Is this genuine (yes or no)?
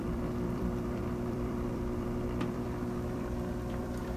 no